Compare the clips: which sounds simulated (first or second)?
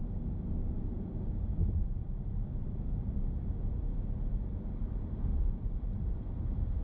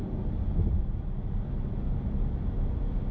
first